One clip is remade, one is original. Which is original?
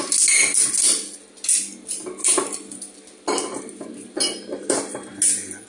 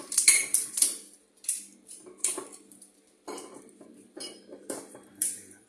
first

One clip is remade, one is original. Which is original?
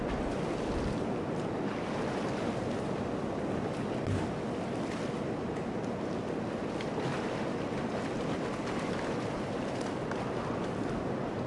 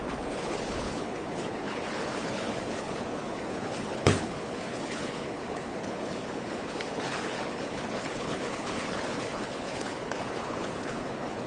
first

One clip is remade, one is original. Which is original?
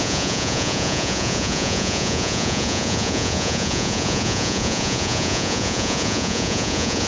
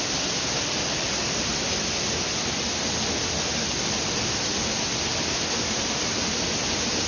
second